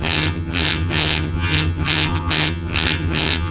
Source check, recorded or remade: remade